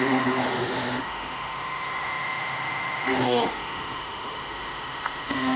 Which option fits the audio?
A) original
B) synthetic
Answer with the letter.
B